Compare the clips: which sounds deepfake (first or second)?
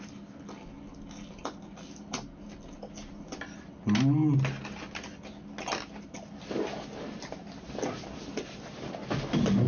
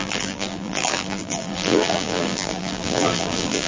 second